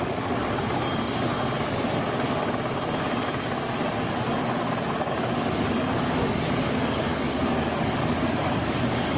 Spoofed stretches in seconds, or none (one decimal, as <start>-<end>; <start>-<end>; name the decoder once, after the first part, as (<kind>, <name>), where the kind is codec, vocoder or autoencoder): 0.0-0.4 (codec, DAC); 5.1-9.2